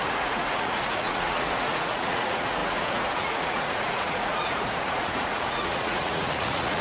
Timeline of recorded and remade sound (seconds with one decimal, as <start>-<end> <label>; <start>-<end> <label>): 0.0-6.8 remade